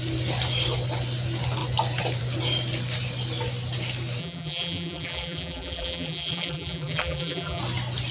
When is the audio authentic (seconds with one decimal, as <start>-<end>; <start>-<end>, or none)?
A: 0.0-4.2; 7.6-8.1